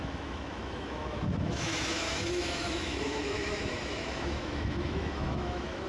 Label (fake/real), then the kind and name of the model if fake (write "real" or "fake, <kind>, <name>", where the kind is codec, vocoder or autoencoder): fake, autoencoder, DAC-VAE